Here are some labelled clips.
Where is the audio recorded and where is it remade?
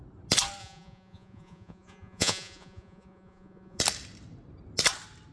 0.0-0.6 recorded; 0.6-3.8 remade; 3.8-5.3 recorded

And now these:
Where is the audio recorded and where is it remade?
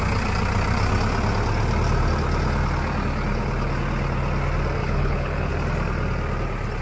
0.0-4.8 recorded; 4.8-5.5 remade; 5.5-6.8 recorded